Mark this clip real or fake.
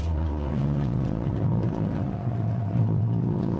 fake